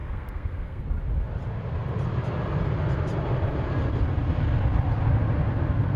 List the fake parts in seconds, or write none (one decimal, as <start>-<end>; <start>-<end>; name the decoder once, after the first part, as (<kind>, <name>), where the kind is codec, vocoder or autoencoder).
0.0-0.8 (codec, SNAC)